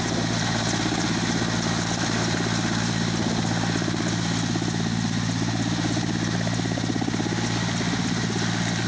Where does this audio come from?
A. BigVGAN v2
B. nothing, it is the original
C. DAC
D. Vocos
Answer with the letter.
B